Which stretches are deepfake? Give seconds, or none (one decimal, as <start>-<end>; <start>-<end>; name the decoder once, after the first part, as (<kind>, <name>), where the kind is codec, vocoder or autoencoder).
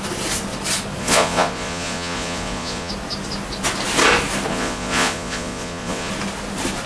1.0-2.9 (vocoder, Vocos); 4.5-6.1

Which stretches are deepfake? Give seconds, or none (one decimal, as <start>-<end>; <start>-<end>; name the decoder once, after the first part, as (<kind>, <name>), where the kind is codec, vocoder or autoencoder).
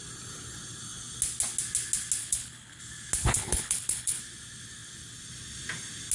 2.2-2.8 (codec, HILCodec); 3.2-4.2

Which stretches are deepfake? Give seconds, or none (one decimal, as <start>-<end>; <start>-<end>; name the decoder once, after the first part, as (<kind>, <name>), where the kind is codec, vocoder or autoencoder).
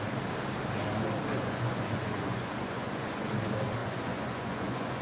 1.3-3.3 (vocoder, Vocos); 3.8-5.0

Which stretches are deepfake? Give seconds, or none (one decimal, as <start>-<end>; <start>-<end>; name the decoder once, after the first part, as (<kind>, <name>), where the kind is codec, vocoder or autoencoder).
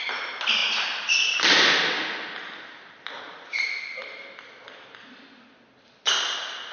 none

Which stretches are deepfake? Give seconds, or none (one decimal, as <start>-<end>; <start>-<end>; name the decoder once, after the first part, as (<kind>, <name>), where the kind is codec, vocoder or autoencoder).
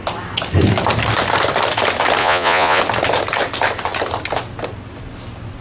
2.2-2.8 (vocoder, Vocos)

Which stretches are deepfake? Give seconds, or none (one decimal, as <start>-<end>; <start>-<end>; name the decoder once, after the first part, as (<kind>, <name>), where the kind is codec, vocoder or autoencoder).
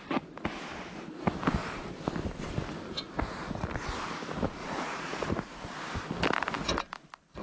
4.6-5.4 (vocoder, Vocos)